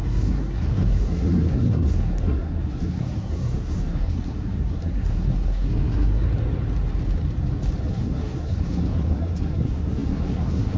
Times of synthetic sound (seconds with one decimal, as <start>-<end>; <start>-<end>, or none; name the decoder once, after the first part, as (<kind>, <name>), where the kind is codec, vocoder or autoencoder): 0.0-6.3 (codec, SNAC); 7.9-10.8